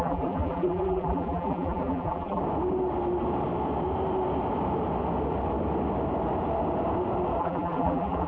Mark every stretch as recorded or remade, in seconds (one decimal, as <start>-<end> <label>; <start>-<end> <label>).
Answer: 0.0-2.4 remade; 2.4-7.4 recorded; 7.4-8.3 remade